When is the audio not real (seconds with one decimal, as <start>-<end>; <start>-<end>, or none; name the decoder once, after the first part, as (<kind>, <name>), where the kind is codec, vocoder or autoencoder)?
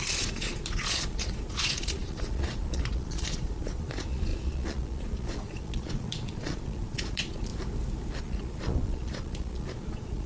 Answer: 0.0-7.5 (vocoder, Vocos); 8.2-10.3